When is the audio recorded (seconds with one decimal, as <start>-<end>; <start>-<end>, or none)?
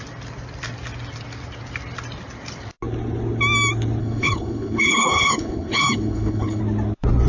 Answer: 0.0-4.0; 6.6-7.3